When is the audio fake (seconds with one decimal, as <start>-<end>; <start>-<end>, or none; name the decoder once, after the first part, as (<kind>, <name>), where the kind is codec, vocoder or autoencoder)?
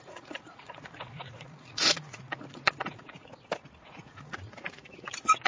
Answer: 0.0-3.3 (vocoder, Vocos); 3.8-5.5